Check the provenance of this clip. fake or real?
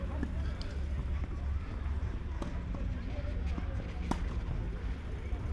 real